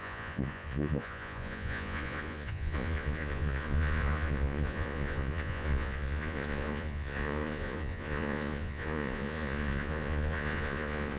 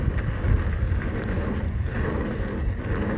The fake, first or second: first